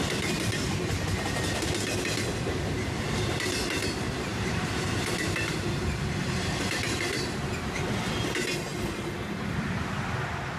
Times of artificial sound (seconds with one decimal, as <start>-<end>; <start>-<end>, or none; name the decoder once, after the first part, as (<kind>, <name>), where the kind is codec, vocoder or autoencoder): 4.3-7.4 (vocoder, BigVGAN v2)